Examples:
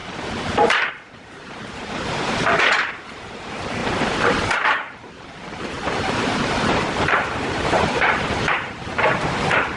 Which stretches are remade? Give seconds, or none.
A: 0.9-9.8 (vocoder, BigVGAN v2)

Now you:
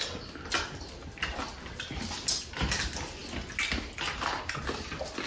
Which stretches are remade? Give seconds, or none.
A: none